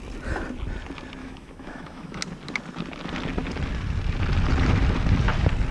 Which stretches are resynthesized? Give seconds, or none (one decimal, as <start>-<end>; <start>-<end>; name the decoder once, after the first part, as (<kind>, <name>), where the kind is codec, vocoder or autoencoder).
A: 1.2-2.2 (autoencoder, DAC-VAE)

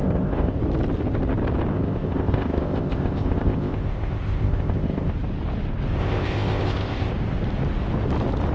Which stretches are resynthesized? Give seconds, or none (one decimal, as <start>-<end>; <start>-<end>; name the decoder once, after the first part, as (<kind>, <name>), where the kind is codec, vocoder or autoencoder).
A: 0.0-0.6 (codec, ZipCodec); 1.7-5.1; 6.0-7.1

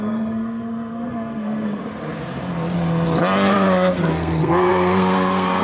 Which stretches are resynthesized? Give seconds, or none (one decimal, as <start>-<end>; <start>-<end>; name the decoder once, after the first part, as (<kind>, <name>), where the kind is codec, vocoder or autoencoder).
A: 0.0-1.8 (codec, SNAC); 3.5-5.6

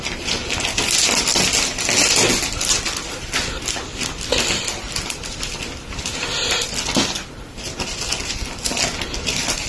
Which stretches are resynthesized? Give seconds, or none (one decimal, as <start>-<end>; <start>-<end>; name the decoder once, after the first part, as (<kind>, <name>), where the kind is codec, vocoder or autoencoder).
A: none

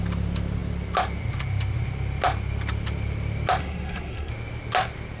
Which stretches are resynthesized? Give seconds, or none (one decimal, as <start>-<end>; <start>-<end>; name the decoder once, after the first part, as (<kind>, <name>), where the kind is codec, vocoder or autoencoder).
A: 3.6-4.3 (codec, SNAC)

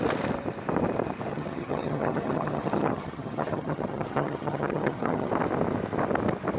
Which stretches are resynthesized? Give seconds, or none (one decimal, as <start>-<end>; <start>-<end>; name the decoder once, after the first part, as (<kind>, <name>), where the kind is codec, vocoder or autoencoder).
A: 1.3-5.3 (vocoder, HiFi-GAN)

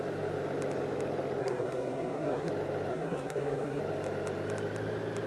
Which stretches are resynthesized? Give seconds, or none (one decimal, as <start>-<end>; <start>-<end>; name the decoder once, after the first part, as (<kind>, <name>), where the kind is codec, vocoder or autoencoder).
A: 1.4-2.5 (codec, SNAC); 2.9-3.8

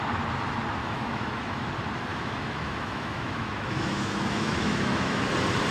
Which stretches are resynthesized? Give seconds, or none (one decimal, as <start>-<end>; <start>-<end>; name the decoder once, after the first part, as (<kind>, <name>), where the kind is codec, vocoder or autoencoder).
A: 0.8-1.7 (autoencoder, DAC-VAE); 2.1-5.2